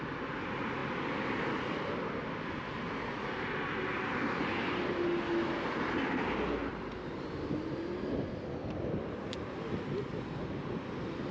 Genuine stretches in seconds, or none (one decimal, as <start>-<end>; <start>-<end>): 0.0-11.3